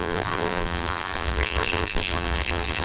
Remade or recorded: remade